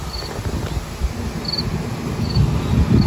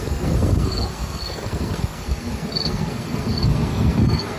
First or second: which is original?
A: first